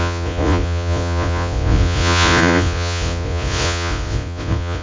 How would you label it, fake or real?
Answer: fake